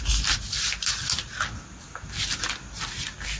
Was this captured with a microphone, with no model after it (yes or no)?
yes